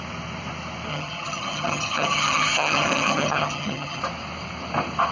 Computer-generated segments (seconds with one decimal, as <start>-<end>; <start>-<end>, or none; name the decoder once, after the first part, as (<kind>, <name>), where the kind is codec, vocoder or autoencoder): 0.9-4.0 (vocoder, HiFi-GAN)